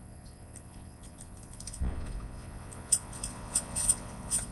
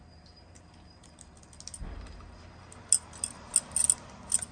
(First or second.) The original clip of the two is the second